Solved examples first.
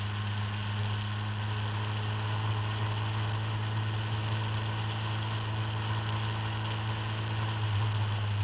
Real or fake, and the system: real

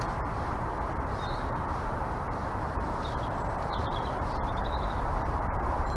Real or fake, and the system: fake, vocoder, BigVGAN v2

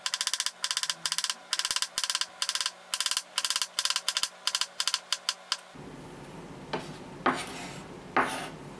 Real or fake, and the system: real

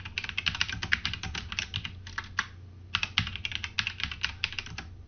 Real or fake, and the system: real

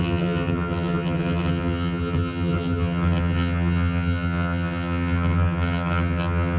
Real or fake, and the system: fake, vocoder, HiFi-GAN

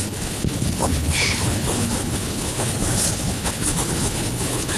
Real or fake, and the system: fake, codec, HILCodec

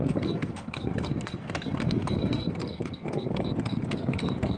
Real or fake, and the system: fake, codec, SNAC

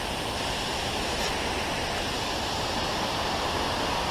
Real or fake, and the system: fake, vocoder, BigVGAN v2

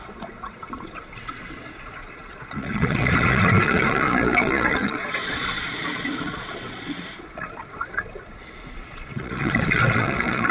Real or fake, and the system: fake, vocoder, Vocos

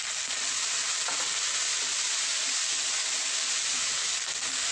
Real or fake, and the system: real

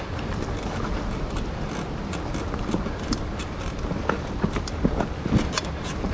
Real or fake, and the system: real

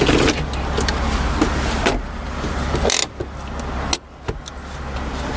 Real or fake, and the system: real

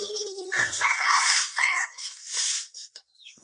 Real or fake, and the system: fake, codec, SNAC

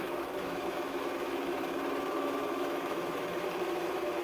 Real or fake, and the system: fake, autoencoder, DAC-VAE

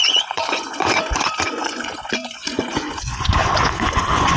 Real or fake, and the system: fake, vocoder, Vocos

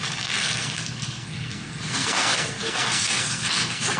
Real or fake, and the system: fake, codec, SNAC